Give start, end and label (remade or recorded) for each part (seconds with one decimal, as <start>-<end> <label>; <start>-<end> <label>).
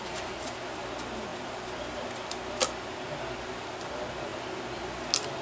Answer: 0.0-5.4 recorded